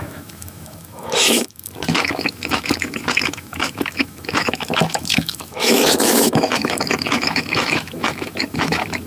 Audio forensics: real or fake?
fake